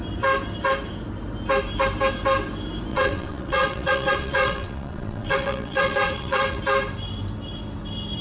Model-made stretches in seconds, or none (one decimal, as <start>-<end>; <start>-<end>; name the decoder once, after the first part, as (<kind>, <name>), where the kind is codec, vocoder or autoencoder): 2.9-6.6 (vocoder, WaveNeXt)